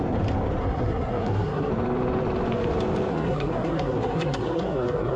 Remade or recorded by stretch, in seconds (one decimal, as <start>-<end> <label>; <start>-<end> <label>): 0.0-0.6 recorded; 0.6-1.7 remade; 1.7-3.1 recorded; 3.1-5.2 remade